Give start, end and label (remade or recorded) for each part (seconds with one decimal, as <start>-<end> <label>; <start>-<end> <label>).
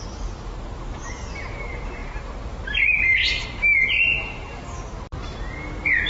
0.0-6.1 recorded